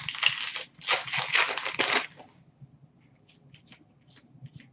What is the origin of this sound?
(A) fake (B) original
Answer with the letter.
B